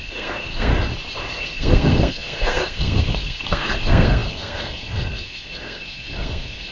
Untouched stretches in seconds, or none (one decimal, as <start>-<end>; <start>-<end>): 0.7-1.3